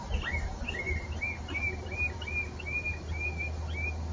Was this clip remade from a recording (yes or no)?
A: no